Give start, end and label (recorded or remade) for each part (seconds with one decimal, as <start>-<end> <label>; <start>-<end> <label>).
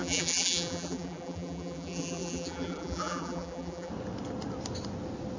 0.0-3.9 remade; 3.9-5.4 recorded